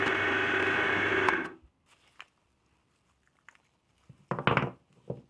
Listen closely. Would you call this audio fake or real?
real